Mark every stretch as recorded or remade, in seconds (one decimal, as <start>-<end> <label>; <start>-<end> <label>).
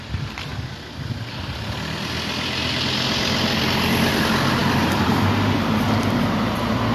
0.0-0.5 remade; 0.5-4.1 recorded; 4.1-6.9 remade